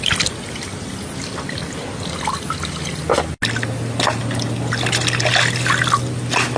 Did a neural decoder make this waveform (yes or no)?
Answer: no